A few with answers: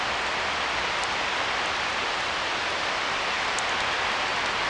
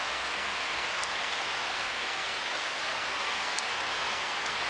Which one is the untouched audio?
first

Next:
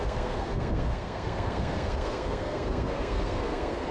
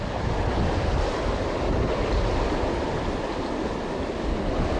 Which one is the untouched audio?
second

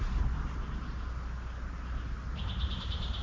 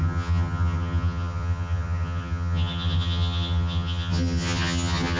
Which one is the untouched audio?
first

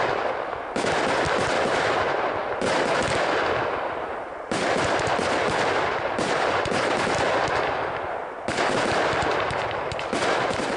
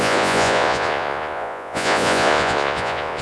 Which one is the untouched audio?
first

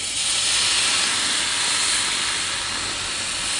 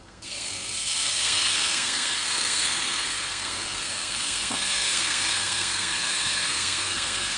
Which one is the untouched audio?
first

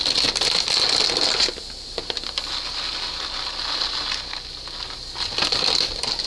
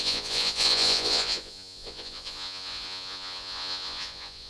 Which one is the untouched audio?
first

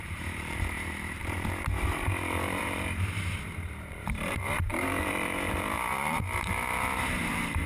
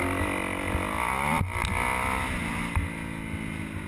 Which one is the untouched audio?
second